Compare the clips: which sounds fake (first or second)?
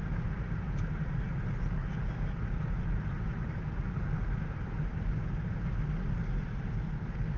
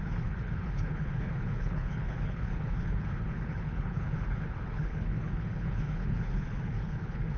second